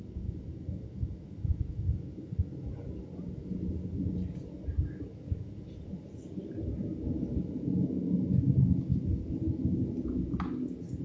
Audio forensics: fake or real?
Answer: real